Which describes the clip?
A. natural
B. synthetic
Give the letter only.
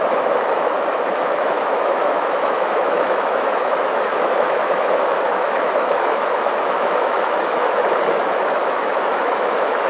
B